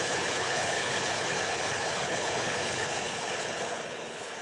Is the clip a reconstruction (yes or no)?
yes